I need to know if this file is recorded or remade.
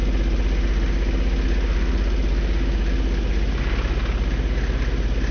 recorded